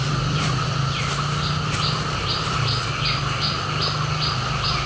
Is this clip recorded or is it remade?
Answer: recorded